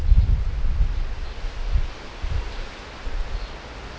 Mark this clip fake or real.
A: real